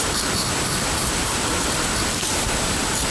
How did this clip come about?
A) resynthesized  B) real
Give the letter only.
B